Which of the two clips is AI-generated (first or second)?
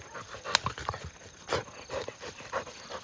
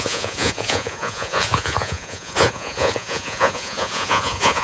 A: second